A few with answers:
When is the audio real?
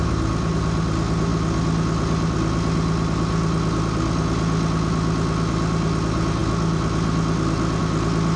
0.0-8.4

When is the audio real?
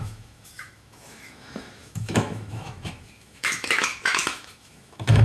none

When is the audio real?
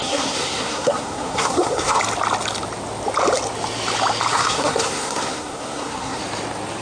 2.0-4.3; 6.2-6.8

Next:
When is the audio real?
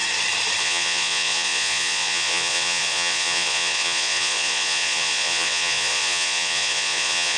0.0-0.6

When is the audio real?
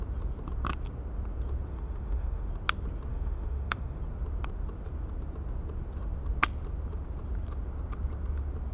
0.0-1.7; 2.5-3.1; 4.0-8.7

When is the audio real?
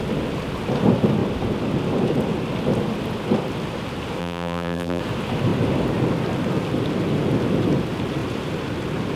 0.0-4.2; 5.0-9.2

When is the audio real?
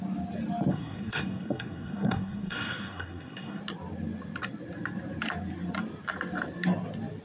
0.0-0.7; 3.6-7.2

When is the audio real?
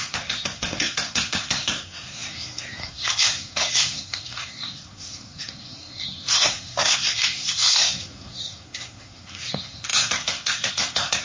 none